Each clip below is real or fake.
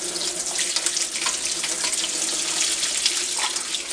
real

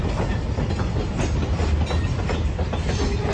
real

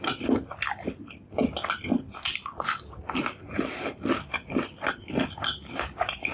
real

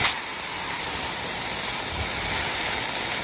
real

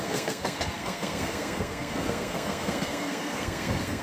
fake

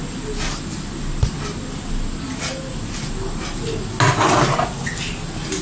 real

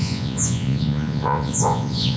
fake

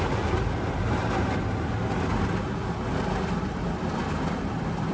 real